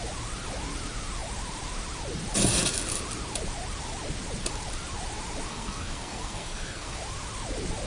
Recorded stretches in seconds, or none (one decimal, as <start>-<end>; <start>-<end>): 0.0-5.5; 7.0-7.9